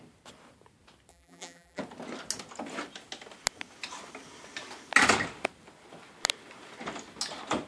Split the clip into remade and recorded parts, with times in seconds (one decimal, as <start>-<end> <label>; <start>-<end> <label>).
0.0-1.1 recorded; 1.1-1.8 remade; 1.8-7.7 recorded